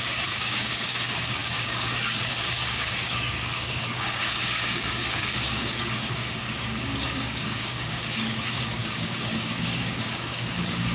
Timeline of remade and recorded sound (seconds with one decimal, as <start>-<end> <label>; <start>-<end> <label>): 0.0-10.9 remade